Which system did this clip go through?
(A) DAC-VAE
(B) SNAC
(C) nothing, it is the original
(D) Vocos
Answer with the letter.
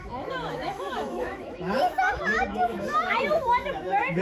A